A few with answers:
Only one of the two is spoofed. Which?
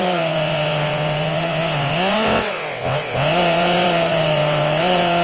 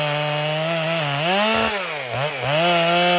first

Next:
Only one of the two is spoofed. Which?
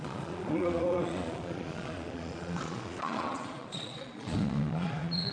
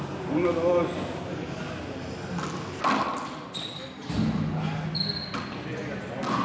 first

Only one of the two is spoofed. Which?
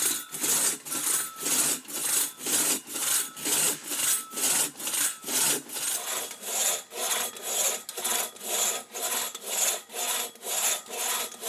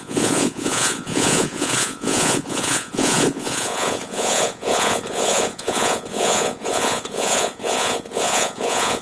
second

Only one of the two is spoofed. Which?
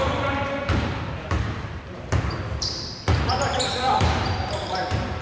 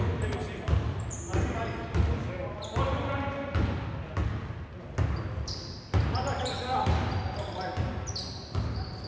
first